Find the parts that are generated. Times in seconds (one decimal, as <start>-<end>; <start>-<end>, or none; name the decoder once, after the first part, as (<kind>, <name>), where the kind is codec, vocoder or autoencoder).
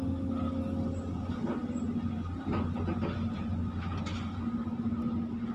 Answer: 1.2-1.7 (vocoder, BigVGAN v2)